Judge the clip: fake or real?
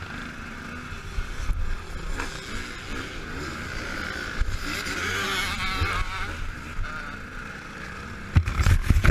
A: real